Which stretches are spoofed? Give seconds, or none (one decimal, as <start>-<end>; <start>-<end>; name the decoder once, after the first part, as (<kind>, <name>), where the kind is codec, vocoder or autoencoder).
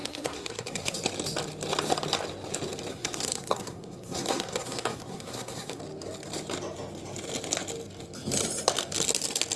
0.0-1.0 (codec, SNAC); 2.9-5.8